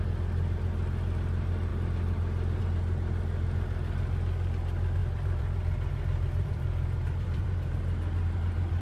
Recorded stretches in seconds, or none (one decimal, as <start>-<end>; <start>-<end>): 0.0-5.0; 7.7-8.8